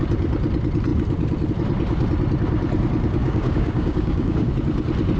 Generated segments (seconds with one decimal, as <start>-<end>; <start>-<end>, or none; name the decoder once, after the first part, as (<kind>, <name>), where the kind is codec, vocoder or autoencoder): 3.2-4.5 (codec, DAC)